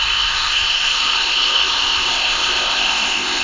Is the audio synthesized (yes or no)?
yes